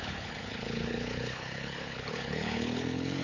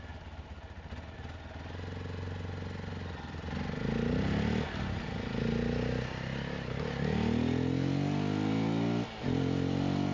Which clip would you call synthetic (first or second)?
first